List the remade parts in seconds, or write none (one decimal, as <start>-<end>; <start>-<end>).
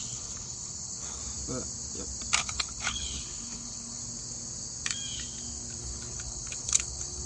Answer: 0.0-1.2; 2.4-4.0; 5.8-7.3